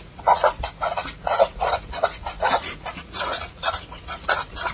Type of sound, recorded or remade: remade